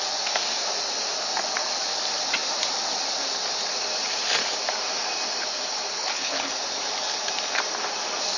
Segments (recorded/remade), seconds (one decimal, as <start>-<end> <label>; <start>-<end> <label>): 0.0-5.9 recorded; 5.9-6.5 remade; 6.5-8.4 recorded